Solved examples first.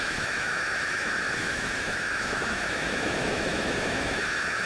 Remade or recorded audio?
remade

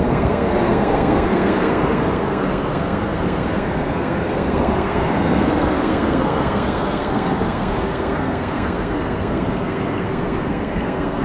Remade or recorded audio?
remade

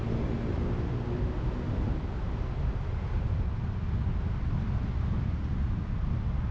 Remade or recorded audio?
recorded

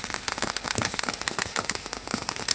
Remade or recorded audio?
remade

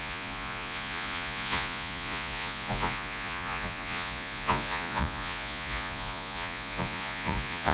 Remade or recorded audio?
remade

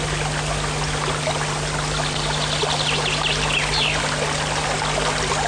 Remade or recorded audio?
recorded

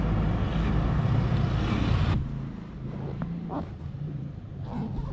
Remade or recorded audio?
recorded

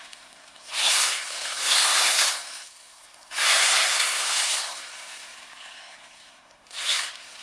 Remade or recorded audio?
remade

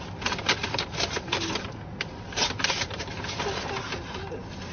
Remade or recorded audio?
recorded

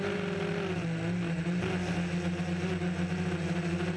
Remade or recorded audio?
recorded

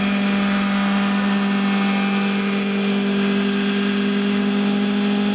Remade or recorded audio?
recorded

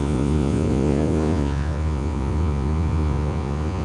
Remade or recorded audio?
remade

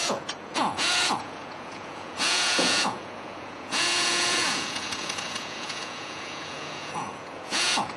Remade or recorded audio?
remade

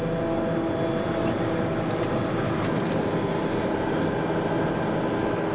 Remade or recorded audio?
recorded